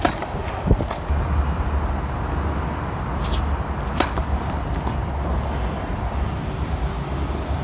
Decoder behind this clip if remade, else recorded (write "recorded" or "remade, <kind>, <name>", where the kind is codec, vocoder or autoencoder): recorded